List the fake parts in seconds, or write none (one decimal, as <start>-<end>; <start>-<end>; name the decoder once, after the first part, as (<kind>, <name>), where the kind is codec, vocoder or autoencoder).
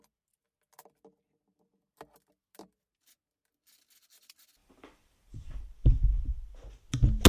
4.6-5.7 (vocoder, BigVGAN v2)